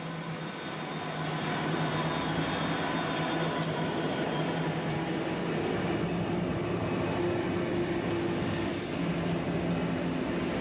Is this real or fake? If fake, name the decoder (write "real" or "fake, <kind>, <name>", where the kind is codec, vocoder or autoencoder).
real